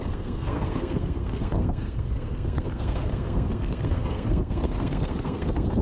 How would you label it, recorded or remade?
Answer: remade